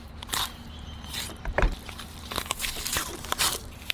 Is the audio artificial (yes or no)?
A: yes